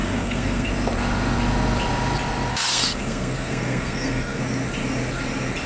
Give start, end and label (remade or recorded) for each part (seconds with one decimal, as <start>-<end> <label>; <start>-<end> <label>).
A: 0.0-0.7 remade; 0.7-2.5 recorded; 2.5-4.4 remade; 4.4-5.7 recorded